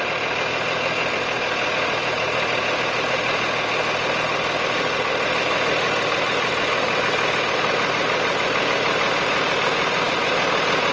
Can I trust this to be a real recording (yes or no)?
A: yes